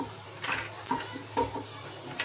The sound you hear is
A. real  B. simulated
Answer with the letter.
A